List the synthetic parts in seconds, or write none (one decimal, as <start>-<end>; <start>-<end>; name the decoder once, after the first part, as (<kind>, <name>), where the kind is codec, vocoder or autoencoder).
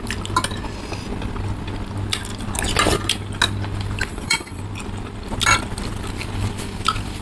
4.1-4.6 (vocoder, Vocos)